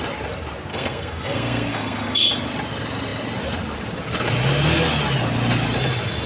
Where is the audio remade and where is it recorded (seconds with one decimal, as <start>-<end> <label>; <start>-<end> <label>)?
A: 0.0-0.7 recorded; 0.7-2.3 remade; 2.3-6.3 recorded